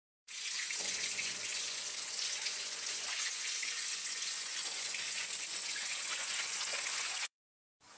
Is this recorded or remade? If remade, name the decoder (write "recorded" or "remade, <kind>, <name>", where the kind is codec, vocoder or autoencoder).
remade, vocoder, Vocos